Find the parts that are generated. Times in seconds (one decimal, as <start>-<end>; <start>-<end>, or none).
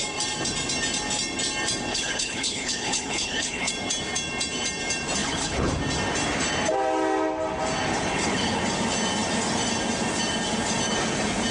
1.9-3.7; 5.2-5.7; 7.9-8.6